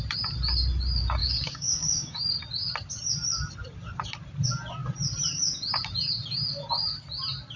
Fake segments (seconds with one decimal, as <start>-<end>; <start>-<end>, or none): 1.2-2.2